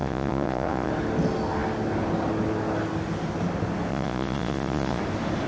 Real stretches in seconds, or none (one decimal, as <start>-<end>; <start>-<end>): 0.9-3.9; 5.0-5.5